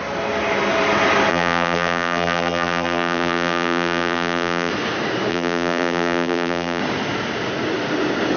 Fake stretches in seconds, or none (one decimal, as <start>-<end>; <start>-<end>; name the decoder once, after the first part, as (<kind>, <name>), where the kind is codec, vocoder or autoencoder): 1.3-4.7 (vocoder, BigVGAN v2); 5.3-6.8